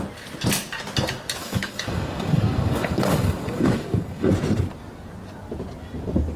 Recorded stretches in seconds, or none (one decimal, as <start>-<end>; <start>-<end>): 0.0-1.4; 4.3-6.4

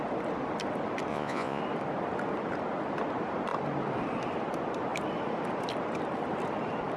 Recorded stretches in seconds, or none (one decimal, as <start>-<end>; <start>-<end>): 0.0-1.1; 1.6-7.0

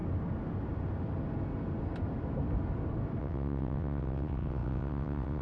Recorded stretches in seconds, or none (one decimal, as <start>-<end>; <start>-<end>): 0.0-3.2